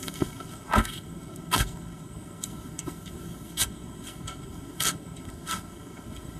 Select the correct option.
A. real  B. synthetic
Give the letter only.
B